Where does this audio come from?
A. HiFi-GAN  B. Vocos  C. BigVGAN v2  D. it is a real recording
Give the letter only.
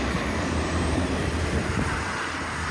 C